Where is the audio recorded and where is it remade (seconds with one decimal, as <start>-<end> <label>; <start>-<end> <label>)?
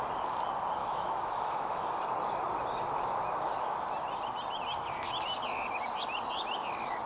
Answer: 0.0-0.8 recorded; 0.8-2.0 remade; 2.0-7.1 recorded